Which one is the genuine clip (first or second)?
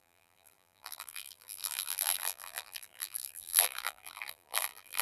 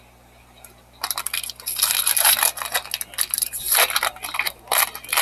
second